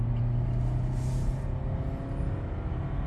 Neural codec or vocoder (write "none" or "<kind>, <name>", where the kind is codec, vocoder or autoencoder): none